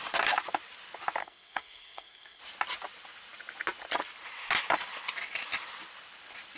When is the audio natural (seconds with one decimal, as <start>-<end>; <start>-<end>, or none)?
0.0-1.2; 2.4-6.6